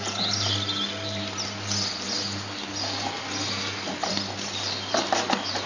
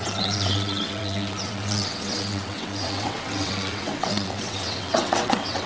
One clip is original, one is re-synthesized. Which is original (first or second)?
first